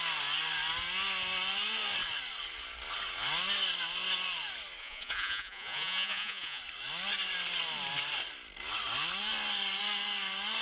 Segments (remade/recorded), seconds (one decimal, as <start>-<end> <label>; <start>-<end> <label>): 0.0-4.8 recorded; 4.8-6.6 remade; 6.6-10.6 recorded

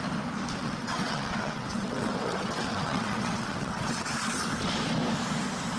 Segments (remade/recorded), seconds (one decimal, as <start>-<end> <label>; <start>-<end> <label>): 0.0-0.6 recorded; 0.6-4.1 remade; 4.1-5.8 recorded

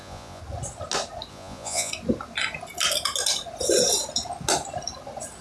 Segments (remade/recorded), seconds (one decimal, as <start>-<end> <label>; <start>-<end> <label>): 0.0-0.4 remade; 0.4-1.3 recorded; 1.3-1.9 remade; 1.9-5.4 recorded